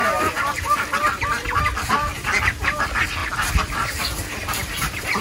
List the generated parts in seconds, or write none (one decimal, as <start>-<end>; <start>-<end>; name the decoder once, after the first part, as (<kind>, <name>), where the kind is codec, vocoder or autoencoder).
3.2-4.0 (vocoder, BigVGAN v2); 4.4-5.2